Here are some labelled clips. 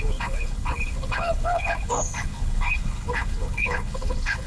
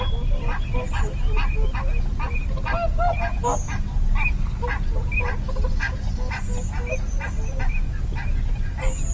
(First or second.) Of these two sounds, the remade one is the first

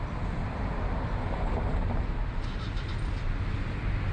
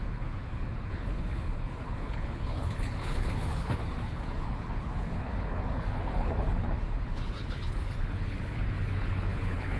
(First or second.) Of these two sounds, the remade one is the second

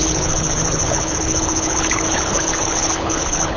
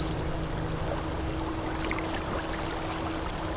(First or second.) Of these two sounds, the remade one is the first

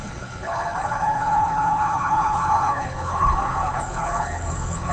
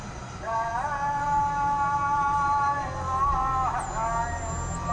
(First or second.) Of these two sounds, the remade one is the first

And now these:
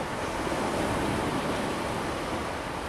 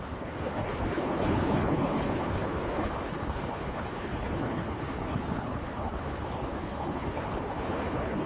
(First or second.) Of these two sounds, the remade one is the second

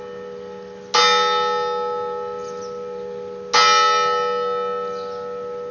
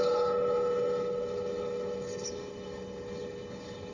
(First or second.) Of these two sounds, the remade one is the second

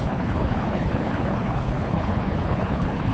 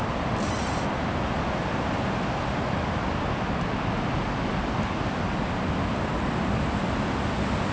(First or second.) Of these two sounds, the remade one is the first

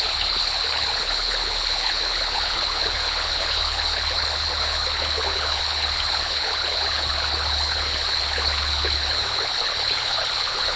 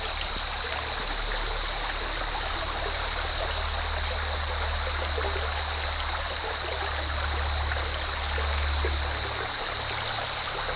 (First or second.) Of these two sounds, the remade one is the first